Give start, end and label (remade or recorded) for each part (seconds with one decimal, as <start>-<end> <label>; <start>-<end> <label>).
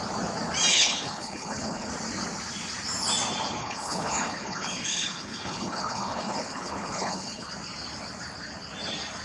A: 0.0-0.7 recorded; 0.7-1.9 remade; 1.9-3.6 recorded; 3.6-7.5 remade; 7.5-9.2 recorded